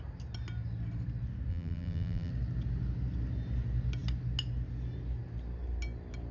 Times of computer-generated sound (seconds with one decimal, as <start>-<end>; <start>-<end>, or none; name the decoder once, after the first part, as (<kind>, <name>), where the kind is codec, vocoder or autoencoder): 1.5-2.3 (vocoder, BigVGAN v2)